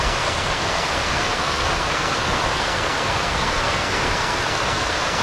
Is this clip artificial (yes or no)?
yes